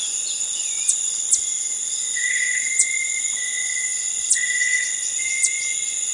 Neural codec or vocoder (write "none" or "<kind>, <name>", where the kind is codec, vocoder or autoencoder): vocoder, Vocos